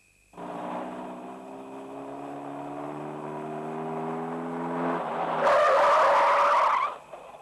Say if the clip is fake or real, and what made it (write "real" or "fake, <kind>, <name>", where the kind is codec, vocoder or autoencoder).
real